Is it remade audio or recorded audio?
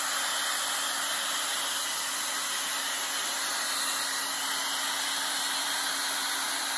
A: recorded